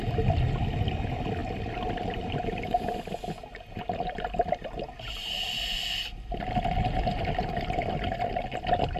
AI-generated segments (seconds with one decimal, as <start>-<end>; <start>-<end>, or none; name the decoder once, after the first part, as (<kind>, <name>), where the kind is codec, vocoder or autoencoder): none